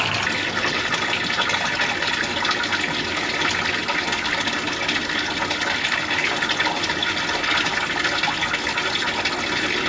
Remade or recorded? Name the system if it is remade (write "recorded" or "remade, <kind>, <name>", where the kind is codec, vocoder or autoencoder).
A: recorded